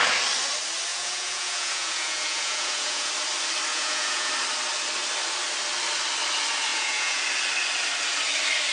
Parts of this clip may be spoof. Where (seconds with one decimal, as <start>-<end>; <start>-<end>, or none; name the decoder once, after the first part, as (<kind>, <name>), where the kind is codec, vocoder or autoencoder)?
0.9-3.1 (vocoder, Vocos); 3.7-4.3; 6.7-7.2